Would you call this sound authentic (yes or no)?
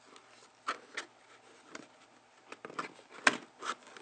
yes